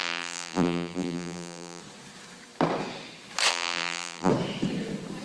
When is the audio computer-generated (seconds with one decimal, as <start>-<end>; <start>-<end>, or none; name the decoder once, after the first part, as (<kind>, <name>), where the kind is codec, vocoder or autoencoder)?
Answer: 0.0-1.8 (vocoder, BigVGAN v2); 3.5-4.3